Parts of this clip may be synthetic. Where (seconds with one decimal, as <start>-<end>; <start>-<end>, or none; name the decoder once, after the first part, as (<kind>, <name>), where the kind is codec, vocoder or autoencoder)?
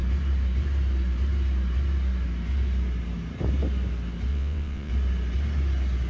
4.3-4.9 (vocoder, WaveNeXt)